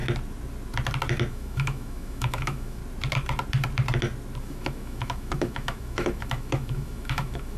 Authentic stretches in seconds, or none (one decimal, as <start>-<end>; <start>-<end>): 0.0-1.3; 2.8-4.4